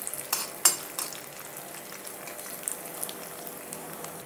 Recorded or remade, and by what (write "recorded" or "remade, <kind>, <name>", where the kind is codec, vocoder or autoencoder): recorded